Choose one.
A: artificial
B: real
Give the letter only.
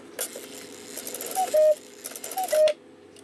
B